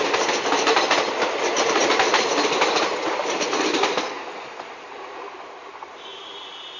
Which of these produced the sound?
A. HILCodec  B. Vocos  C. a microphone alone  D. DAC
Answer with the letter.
C